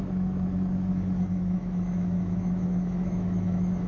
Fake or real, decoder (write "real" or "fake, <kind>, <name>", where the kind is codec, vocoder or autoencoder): fake, autoencoder, DAC-VAE